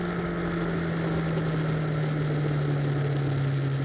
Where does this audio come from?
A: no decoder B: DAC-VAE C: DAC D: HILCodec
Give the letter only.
A